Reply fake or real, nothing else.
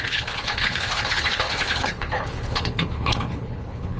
fake